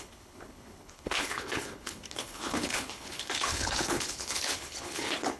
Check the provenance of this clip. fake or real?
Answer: fake